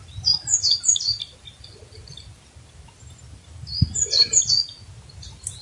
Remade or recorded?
recorded